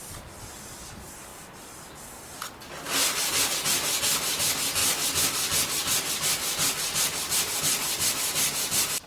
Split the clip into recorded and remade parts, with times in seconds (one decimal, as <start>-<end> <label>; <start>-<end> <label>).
0.0-9.1 recorded